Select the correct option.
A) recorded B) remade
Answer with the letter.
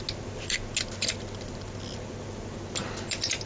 A